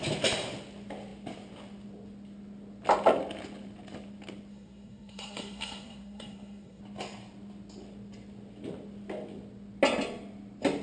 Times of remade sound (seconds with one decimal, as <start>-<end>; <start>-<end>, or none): 4.5-6.8